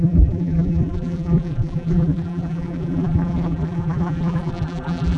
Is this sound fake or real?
fake